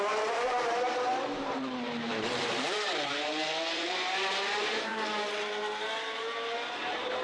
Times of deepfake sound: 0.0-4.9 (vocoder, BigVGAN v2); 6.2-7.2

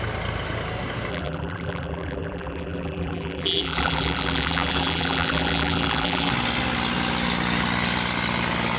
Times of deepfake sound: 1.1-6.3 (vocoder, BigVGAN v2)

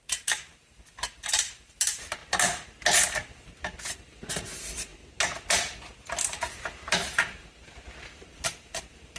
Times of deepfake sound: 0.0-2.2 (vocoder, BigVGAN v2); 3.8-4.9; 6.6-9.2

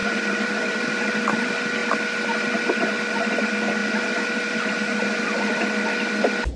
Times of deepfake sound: 0.0-1.4 (vocoder, BigVGAN v2); 3.8-5.5

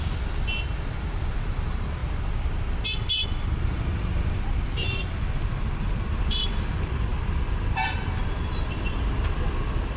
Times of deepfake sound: 0.0-2.0 (vocoder, BigVGAN v2); 4.3-10.0

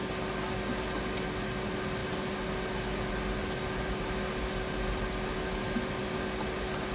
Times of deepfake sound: 5.5-6.1 (vocoder, BigVGAN v2)

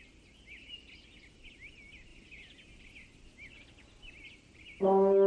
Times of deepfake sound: none